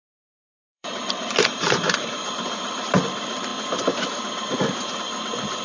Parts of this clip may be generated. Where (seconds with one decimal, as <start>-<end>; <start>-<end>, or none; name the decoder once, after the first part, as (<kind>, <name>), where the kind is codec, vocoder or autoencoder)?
0.5-2.3 (vocoder, BigVGAN v2)